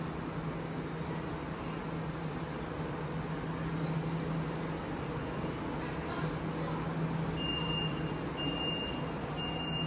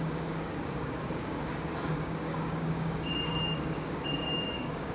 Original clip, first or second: first